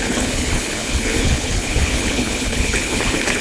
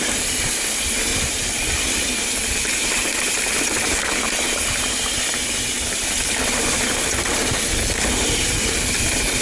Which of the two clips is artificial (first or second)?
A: first